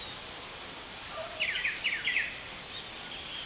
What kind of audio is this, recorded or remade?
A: remade